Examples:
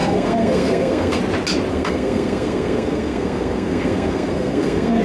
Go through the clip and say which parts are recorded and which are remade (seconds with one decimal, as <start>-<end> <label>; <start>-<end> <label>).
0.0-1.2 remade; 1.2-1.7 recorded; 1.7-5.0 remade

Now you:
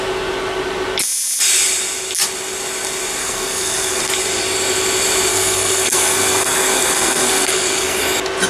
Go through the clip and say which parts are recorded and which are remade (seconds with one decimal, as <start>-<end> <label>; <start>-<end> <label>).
0.0-3.2 recorded; 3.2-4.0 remade; 4.0-5.3 recorded; 5.3-8.0 remade; 8.0-8.5 recorded

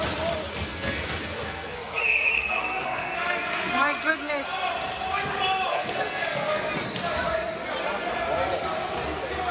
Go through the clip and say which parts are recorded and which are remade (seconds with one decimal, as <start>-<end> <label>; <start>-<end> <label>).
0.0-0.5 recorded; 0.5-4.3 remade; 4.3-5.7 recorded; 5.7-6.7 remade; 6.7-9.5 recorded

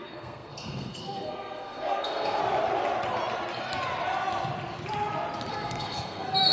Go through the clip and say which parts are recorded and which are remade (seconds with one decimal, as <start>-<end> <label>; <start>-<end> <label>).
0.0-2.4 remade; 2.4-5.5 recorded; 5.5-6.5 remade

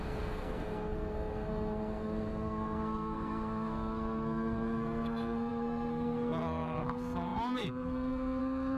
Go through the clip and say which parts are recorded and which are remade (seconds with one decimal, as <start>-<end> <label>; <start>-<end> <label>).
0.0-8.8 remade